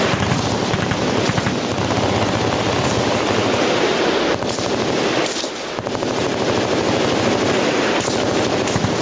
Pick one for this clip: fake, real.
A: real